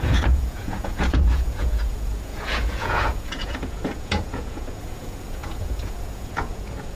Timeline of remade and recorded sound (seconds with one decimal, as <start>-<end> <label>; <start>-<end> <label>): 0.0-6.9 remade